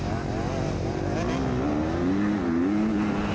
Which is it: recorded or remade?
recorded